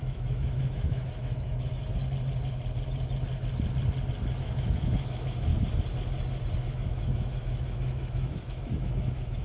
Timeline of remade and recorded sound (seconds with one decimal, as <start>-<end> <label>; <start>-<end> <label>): 0.0-2.0 remade; 2.0-4.3 recorded; 4.3-5.5 remade; 5.5-6.6 recorded; 6.6-9.4 remade